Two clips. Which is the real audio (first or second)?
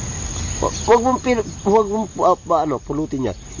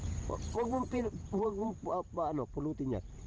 first